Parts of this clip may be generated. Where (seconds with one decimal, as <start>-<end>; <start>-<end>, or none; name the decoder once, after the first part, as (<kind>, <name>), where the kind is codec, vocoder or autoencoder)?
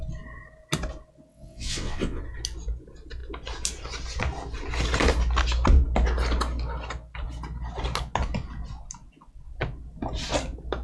1.3-2.2 (vocoder, WaveNeXt)